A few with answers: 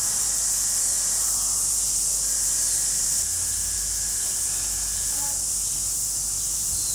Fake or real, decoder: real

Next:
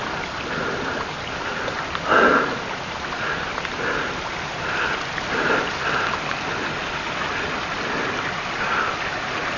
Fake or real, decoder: real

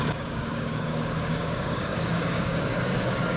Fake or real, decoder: fake, codec, DAC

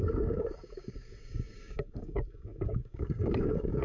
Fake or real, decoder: fake, codec, DAC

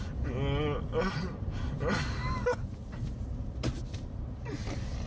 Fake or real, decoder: real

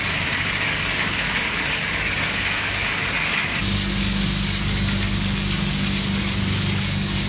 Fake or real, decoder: fake, codec, DAC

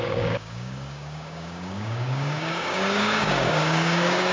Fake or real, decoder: fake, codec, DAC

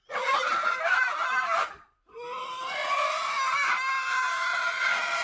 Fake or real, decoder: real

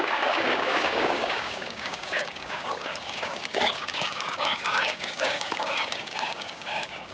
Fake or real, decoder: fake, codec, DAC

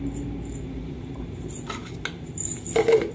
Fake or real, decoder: real